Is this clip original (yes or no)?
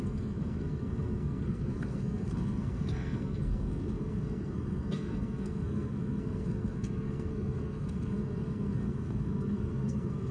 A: no